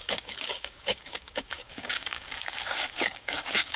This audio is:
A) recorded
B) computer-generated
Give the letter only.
B